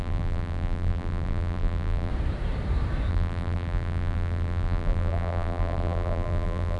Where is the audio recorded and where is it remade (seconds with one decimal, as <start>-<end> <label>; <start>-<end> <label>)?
0.0-2.1 remade; 2.1-3.1 recorded; 3.1-6.8 remade